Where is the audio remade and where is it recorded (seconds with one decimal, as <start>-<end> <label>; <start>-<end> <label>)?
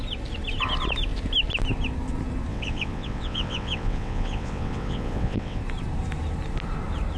0.0-2.5 recorded; 2.5-5.6 remade; 5.6-7.2 recorded